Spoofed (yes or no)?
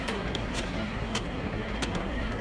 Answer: yes